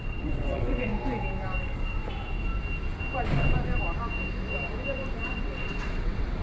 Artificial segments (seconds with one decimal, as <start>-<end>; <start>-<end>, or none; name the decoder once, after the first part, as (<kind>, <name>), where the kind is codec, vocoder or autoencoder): 0.0-0.9 (vocoder, WaveNeXt); 1.6-2.0; 5.4-6.4